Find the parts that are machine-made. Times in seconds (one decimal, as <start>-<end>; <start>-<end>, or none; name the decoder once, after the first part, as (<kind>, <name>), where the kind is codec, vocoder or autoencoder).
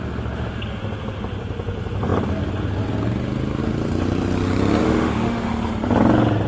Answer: 4.8-5.5 (autoencoder, DAC-VAE)